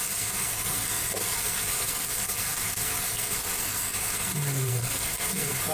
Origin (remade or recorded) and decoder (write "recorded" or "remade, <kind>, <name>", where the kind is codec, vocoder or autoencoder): remade, codec, SNAC